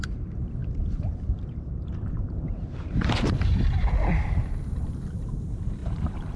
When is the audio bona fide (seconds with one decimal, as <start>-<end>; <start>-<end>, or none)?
0.0-0.6; 3.9-5.8